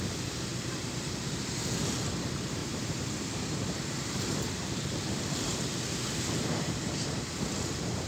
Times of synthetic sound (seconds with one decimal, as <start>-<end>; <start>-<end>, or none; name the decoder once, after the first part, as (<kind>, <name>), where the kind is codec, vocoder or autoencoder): 0.5-1.6 (vocoder, BigVGAN v2); 2.6-7.3